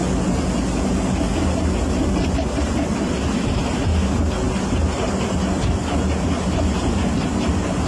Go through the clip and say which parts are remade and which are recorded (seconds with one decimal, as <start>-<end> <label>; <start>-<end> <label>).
0.0-4.5 recorded; 4.5-7.9 remade

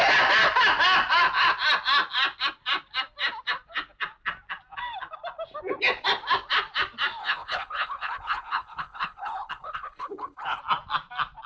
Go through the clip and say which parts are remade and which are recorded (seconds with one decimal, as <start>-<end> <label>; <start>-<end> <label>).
0.0-7.2 recorded; 7.2-10.6 remade; 10.6-11.5 recorded

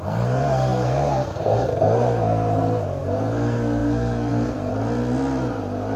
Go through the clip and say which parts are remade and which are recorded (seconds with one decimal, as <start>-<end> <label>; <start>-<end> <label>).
0.0-4.7 remade; 4.7-6.0 recorded

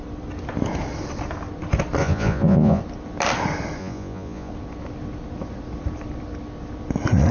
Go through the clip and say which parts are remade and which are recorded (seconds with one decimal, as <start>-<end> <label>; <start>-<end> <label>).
0.0-2.0 recorded; 2.0-2.8 remade; 2.8-3.8 recorded; 3.8-4.5 remade; 4.5-7.3 recorded

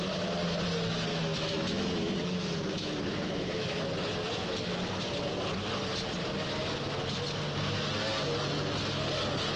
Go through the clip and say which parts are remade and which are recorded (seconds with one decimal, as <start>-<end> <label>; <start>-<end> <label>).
0.0-1.1 recorded; 1.1-3.8 remade; 3.8-9.6 recorded